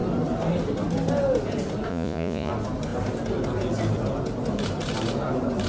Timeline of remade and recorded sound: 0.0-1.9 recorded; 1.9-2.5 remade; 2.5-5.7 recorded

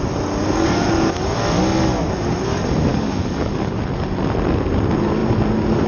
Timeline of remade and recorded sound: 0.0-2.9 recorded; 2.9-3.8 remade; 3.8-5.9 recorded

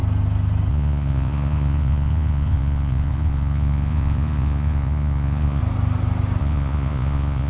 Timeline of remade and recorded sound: 0.0-0.7 recorded; 0.7-5.6 remade; 5.6-6.4 recorded; 6.4-7.5 remade

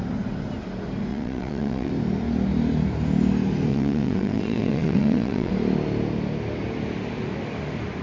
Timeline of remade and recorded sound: 0.0-1.1 recorded; 1.1-1.9 remade; 1.9-3.7 recorded; 3.7-5.5 remade; 5.5-8.0 recorded